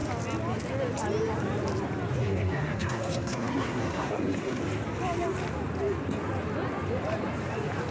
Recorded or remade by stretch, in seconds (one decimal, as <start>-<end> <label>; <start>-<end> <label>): 0.0-2.2 recorded; 2.2-4.6 remade; 4.6-7.9 recorded